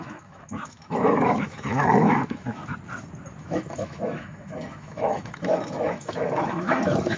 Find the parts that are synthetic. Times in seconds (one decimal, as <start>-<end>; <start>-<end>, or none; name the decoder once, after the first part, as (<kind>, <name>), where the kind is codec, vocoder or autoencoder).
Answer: 0.0-2.6 (autoencoder, DAC-VAE); 3.4-7.2